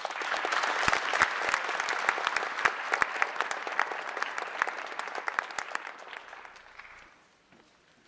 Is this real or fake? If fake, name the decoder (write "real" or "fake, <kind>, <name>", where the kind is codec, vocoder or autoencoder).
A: real